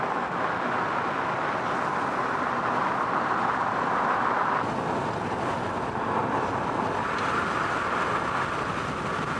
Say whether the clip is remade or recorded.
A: recorded